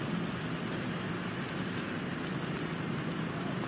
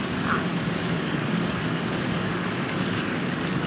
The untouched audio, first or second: first